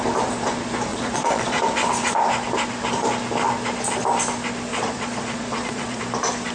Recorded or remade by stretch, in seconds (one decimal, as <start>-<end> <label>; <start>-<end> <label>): 0.0-0.9 recorded; 0.9-1.6 remade; 1.6-4.7 recorded; 4.7-6.0 remade; 6.0-6.5 recorded